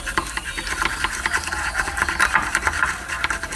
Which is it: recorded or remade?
recorded